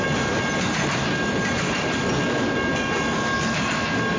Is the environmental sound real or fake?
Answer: real